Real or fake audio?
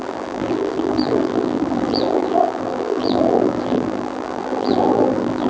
fake